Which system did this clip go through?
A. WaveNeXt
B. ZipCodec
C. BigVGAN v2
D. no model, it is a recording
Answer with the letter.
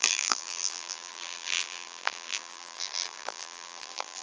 C